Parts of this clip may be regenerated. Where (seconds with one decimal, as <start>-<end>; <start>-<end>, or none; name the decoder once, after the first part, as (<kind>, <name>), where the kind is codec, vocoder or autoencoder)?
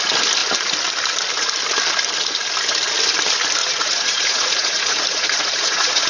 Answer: 3.6-6.1 (vocoder, Vocos)